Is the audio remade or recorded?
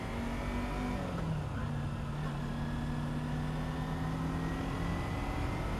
recorded